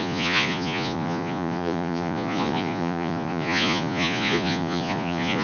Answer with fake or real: fake